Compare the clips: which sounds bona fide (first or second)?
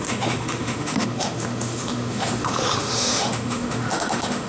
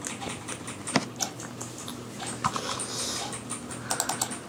second